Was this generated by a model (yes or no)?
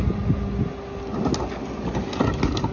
no